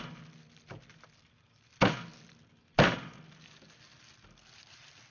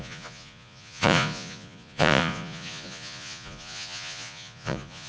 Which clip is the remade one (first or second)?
second